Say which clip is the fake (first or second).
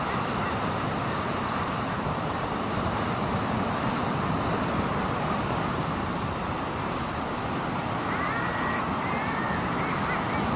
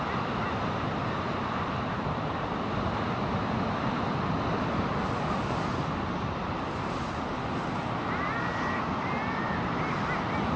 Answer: first